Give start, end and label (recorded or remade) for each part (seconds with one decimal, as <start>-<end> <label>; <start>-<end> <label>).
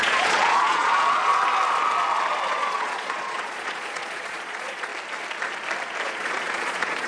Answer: 0.0-1.3 remade; 1.3-2.5 recorded; 2.5-4.9 remade; 4.9-6.0 recorded; 6.0-7.1 remade